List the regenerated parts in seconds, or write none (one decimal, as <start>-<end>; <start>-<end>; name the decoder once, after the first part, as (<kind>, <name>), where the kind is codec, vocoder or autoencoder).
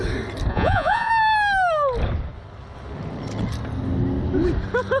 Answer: 0.5-1.1 (vocoder, Vocos)